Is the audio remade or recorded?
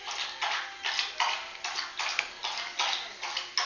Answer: recorded